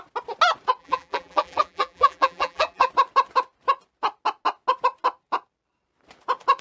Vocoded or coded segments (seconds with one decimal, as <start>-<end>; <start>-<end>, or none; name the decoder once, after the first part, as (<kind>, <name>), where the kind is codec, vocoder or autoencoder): 0.8-2.9 (vocoder, BigVGAN v2)